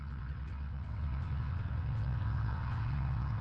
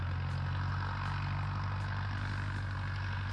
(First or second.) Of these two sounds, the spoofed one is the first